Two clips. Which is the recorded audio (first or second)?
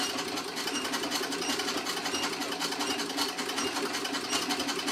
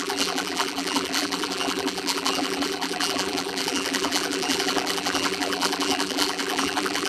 first